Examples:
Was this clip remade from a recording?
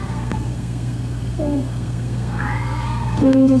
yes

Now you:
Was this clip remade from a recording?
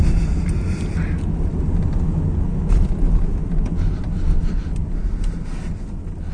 no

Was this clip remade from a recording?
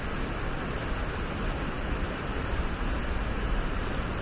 no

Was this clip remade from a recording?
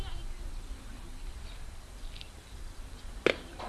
no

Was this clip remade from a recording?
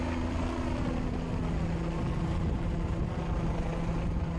no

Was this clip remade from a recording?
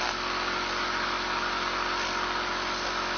no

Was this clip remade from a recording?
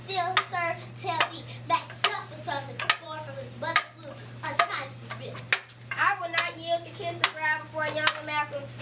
no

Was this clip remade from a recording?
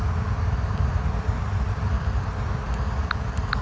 no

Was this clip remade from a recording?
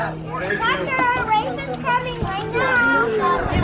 no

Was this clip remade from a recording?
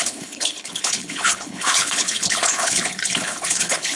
yes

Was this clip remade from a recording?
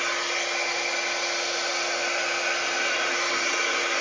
no